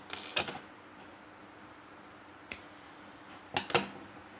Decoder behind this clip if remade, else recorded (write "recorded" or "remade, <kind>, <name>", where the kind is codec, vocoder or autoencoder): recorded